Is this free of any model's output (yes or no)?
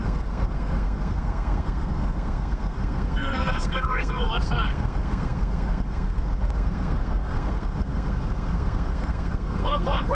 no